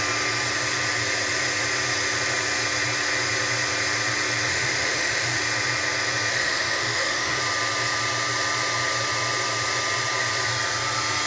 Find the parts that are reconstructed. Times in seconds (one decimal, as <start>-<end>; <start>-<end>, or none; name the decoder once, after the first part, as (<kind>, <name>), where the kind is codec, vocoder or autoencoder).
4.5-5.4 (autoencoder, DAC-VAE); 6.3-7.4